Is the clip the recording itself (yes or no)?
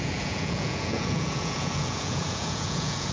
no